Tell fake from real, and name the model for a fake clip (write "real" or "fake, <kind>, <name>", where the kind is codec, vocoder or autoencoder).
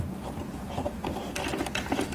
real